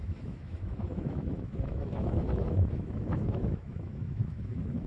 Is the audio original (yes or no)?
no